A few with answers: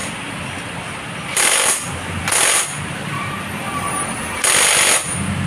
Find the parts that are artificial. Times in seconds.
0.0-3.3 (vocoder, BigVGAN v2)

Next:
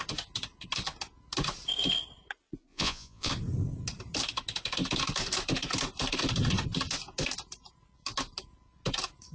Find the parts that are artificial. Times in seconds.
2.7-3.3 (vocoder, Vocos)

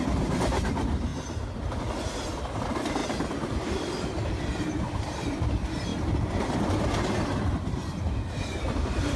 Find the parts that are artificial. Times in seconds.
0.0-1.1 (vocoder, BigVGAN v2); 2.4-3.0; 3.7-5.9; 7.5-9.2

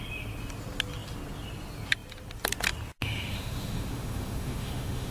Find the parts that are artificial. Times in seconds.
3.0-5.1 (autoencoder, DAC-VAE)